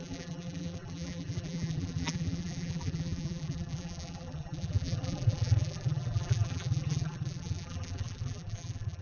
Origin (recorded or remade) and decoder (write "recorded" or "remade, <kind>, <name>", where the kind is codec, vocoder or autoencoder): remade, vocoder, BigVGAN v2